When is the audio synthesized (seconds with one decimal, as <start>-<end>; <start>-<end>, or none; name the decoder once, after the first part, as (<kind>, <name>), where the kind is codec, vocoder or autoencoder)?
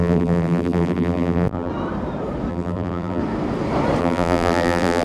0.0-1.7 (vocoder, BigVGAN v2); 2.5-3.2; 4.0-5.0